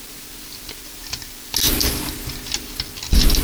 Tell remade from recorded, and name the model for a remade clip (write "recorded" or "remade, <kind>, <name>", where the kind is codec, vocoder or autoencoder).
recorded